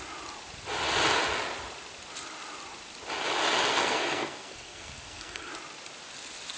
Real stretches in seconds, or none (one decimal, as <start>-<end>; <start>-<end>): 0.0-3.7; 5.5-6.6